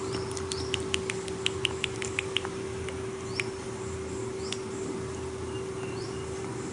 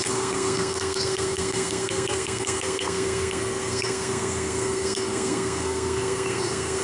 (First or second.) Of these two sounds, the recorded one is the first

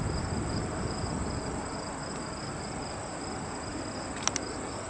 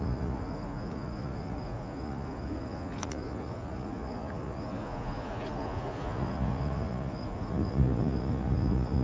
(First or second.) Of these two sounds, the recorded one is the first